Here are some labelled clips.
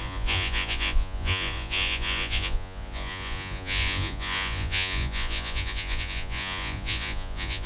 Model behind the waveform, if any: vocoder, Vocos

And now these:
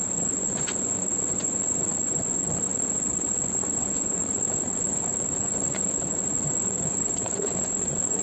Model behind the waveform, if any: vocoder, Vocos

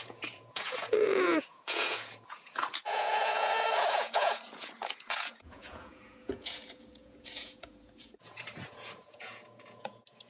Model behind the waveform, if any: vocoder, Vocos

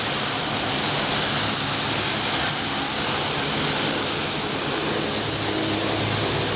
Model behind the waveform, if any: none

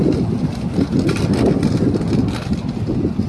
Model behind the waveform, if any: none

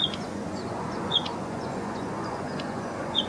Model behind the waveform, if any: vocoder, Vocos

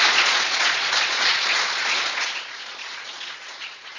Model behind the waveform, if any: vocoder, Vocos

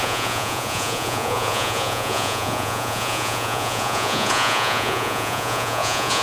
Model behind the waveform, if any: vocoder, Vocos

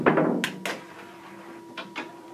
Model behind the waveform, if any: none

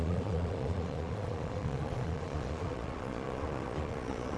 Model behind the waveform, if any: vocoder, Vocos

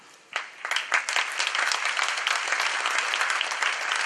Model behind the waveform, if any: none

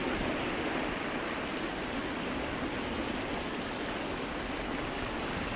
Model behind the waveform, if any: none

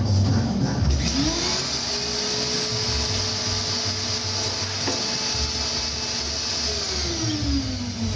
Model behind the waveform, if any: none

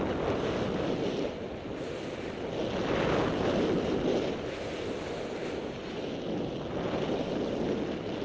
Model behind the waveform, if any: none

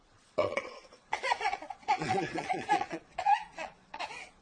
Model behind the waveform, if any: vocoder, Vocos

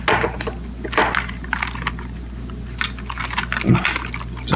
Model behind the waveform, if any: none